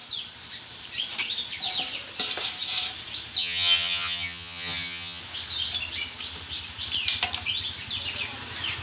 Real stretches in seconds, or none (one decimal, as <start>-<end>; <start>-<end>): 0.0-3.4; 5.2-8.8